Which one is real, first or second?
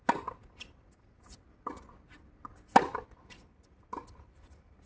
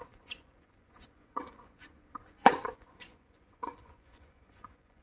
first